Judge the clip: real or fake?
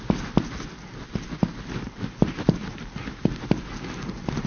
real